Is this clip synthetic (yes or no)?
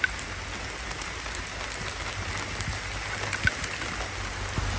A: no